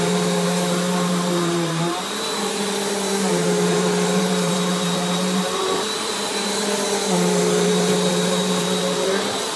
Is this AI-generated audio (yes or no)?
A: yes